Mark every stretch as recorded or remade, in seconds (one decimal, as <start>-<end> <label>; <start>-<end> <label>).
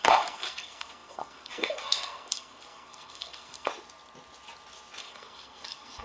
0.0-3.7 remade; 3.7-5.0 recorded; 5.0-6.0 remade